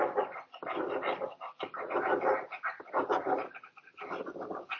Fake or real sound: real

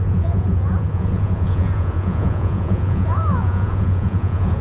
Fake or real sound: fake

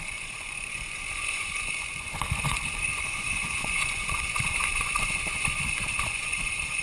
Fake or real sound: fake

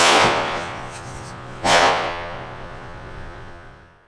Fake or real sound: fake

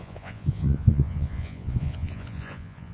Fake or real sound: fake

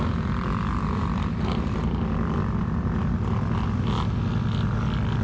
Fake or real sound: real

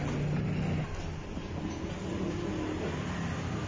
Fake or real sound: real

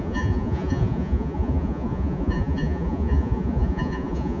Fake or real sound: fake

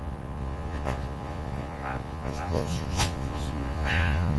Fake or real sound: fake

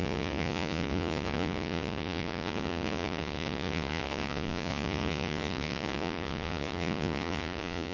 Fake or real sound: fake